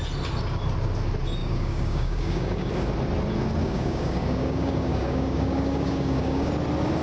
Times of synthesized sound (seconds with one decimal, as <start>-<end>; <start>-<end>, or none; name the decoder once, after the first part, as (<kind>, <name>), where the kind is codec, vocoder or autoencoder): 1.4-2.7 (codec, DAC); 3.6-6.5